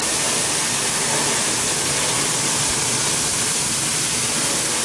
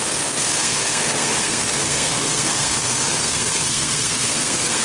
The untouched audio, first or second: first